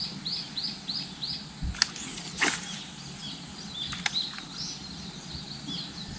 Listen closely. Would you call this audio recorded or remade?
recorded